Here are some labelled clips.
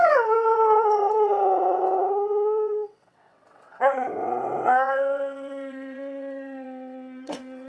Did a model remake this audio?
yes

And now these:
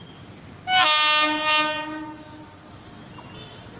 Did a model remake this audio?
no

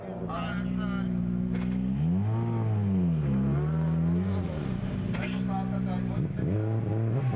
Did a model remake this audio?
no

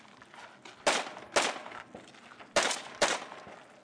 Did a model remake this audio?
no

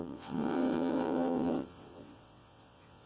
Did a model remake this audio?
yes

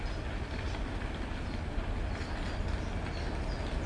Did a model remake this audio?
no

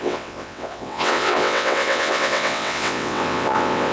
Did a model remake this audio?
yes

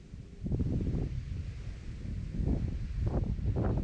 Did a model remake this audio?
no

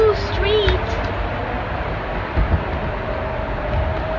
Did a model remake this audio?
no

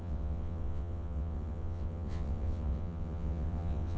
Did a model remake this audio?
yes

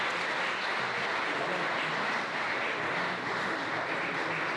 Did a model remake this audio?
no